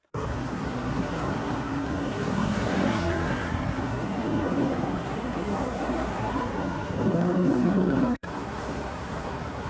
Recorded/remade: remade